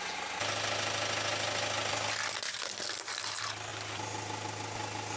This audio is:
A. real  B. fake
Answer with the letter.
A